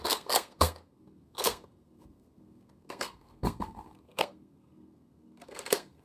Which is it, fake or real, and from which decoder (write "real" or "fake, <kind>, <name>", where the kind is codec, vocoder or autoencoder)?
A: fake, codec, SNAC